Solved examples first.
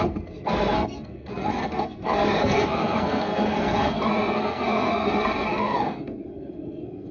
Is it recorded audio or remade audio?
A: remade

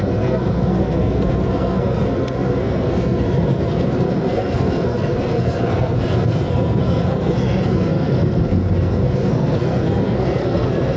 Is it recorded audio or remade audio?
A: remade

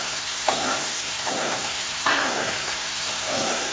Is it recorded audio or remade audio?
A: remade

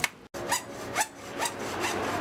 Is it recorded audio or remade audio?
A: recorded